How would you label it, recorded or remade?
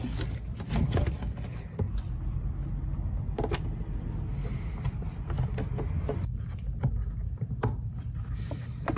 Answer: recorded